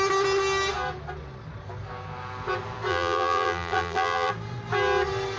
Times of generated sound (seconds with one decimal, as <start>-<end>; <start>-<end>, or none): 2.9-4.3